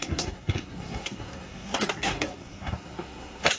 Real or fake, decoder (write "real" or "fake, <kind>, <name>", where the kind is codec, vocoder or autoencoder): fake, codec, SNAC